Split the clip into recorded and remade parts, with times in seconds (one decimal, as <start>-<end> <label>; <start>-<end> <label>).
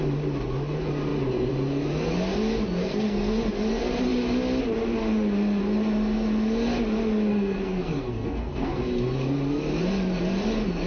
0.0-2.8 recorded; 2.8-3.4 remade; 3.4-7.3 recorded; 7.3-8.8 remade; 8.8-10.9 recorded